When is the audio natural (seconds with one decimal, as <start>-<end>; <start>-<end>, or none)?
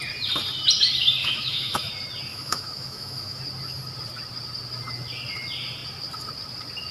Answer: 0.0-1.2; 1.9-2.3; 3.4-6.9